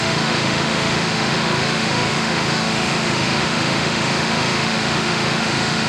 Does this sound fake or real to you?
fake